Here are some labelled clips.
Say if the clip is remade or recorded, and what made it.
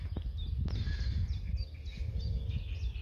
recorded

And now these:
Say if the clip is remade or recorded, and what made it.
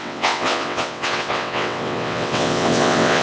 remade, vocoder, WaveNeXt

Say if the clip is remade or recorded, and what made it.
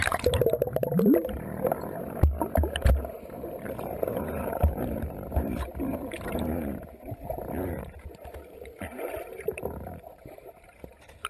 remade, vocoder, BigVGAN v2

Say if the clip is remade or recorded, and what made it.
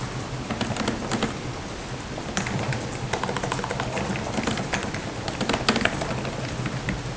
recorded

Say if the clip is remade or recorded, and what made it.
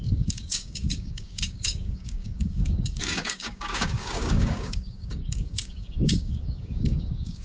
remade, codec, DAC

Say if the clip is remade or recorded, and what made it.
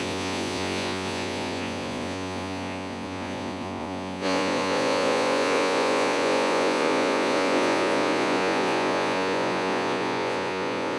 remade, vocoder, Vocos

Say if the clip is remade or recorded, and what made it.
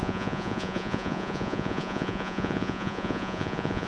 remade, vocoder, Vocos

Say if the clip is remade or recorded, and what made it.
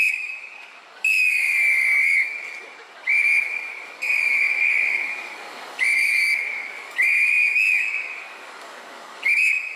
remade, codec, DAC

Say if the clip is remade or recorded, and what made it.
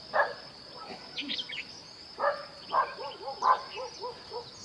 remade, vocoder, BigVGAN v2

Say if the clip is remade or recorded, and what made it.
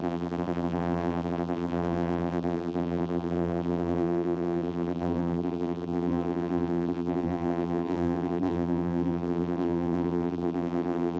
remade, vocoder, BigVGAN v2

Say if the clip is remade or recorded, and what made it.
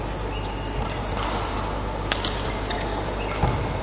recorded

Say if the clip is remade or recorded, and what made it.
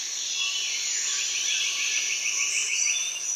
recorded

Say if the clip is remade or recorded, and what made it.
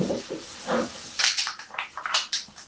remade, vocoder, BigVGAN v2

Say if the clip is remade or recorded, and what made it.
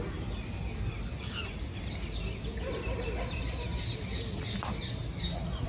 recorded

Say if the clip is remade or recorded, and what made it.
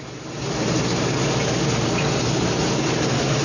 recorded